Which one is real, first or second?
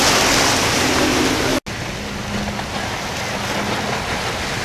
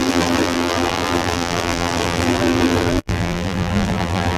first